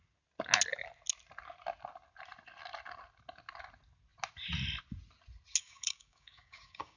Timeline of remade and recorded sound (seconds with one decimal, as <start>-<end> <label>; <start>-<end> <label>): 0.0-5.6 recorded; 5.6-7.0 remade